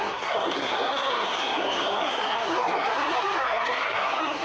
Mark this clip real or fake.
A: fake